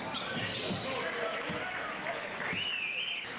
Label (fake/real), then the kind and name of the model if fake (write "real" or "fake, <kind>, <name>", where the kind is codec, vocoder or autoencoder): real